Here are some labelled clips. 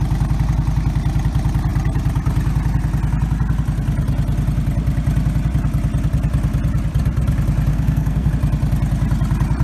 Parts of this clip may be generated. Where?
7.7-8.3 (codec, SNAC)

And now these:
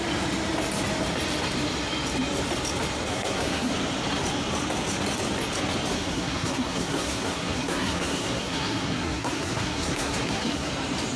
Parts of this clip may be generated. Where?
3.1-3.7 (codec, SNAC); 5.9-10.7

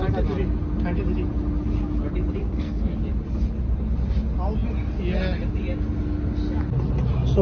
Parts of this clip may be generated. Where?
2.4-2.9 (codec, SNAC)

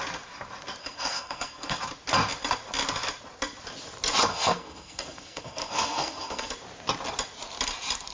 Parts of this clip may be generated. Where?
0.8-1.8 (codec, SNAC); 4.3-6.5

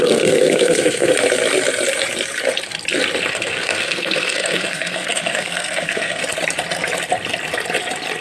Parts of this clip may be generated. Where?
0.0-1.1 (codec, SNAC); 3.3-6.2

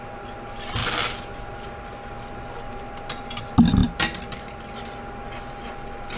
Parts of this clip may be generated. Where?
none